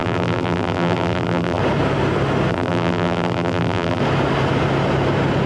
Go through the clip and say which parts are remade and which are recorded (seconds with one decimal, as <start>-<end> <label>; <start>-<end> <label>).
0.0-1.6 remade; 1.6-2.5 recorded; 2.5-4.0 remade; 4.0-5.5 recorded

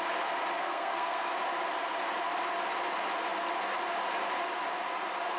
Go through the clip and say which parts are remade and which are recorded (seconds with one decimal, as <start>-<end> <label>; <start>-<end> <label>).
0.0-0.6 recorded; 0.6-1.3 remade; 1.3-5.4 recorded

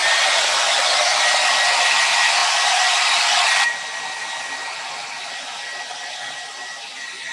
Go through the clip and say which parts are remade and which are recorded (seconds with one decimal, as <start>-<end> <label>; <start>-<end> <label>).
0.0-7.3 recorded